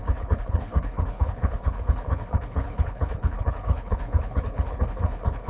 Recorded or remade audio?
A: remade